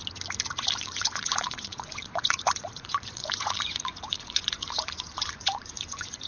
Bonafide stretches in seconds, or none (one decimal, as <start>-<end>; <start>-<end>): 0.0-0.6